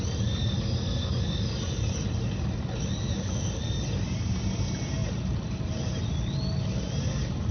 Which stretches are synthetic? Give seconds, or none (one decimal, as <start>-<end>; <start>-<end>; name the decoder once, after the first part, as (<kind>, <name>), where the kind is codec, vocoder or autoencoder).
none